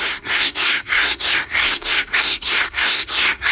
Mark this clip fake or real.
fake